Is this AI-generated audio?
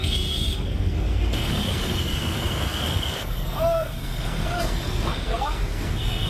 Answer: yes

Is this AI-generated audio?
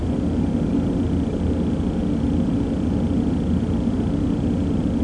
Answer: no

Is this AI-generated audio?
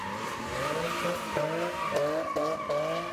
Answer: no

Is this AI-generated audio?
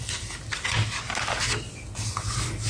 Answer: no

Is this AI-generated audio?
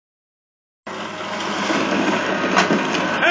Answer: no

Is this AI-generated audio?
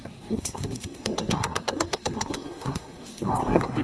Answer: yes